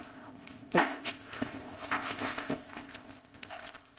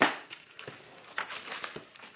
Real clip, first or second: second